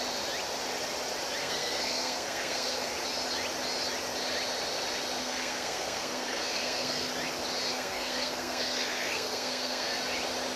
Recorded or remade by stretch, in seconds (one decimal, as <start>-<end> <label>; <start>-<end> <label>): 0.0-1.4 recorded; 1.4-2.9 remade; 2.9-5.2 recorded; 5.2-7.1 remade; 7.1-7.7 recorded; 7.7-10.0 remade; 10.0-10.6 recorded